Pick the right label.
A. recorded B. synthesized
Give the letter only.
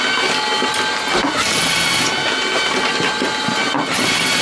A